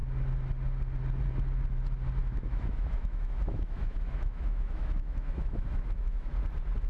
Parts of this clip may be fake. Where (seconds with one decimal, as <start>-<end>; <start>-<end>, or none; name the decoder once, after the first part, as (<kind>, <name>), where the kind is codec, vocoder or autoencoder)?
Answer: 2.2-6.3 (autoencoder, DAC-VAE)